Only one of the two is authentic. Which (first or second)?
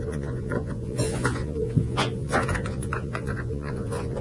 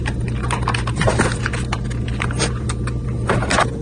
second